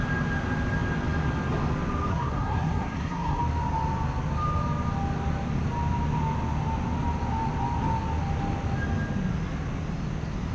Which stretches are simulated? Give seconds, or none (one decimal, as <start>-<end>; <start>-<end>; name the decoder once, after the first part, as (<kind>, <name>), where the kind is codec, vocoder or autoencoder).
2.1-3.4 (codec, SNAC)